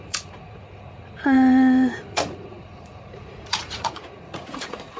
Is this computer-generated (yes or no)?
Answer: yes